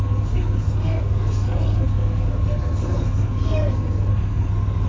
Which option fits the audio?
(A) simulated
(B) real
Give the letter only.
A